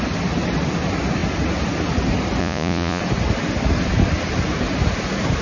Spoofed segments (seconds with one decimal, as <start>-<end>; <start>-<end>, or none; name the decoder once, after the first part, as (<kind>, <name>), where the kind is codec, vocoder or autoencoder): 2.4-3.0 (vocoder, Vocos)